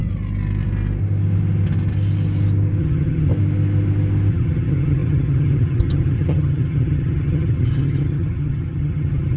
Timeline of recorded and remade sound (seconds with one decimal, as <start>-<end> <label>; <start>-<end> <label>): 0.0-2.8 recorded; 2.8-3.3 remade; 3.3-4.3 recorded; 4.3-9.4 remade